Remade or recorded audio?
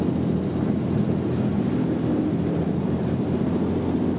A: recorded